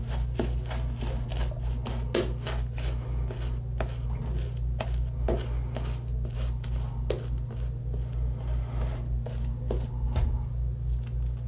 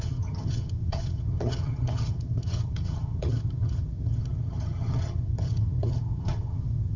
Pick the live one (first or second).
first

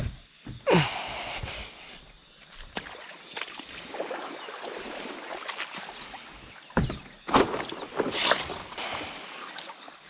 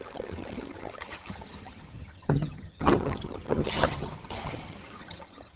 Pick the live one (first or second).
first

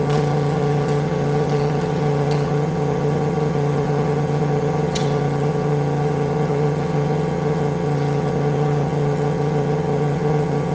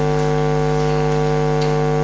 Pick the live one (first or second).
second